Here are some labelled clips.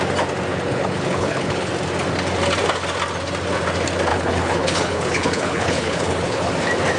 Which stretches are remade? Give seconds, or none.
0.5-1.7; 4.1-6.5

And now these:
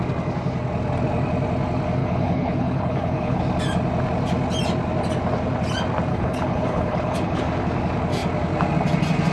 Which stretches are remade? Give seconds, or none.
2.0-3.4; 6.1-7.4

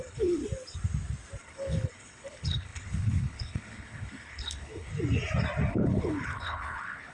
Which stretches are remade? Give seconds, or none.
0.0-0.4; 1.4-4.9; 5.7-7.1